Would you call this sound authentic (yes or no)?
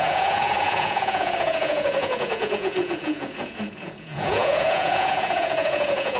no